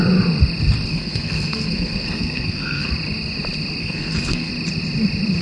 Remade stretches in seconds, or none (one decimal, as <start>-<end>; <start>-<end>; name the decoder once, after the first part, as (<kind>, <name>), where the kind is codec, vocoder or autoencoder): 0.9-2.9 (codec, SNAC); 3.8-4.5